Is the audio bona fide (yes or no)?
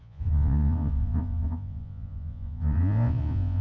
no